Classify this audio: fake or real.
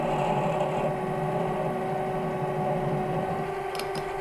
real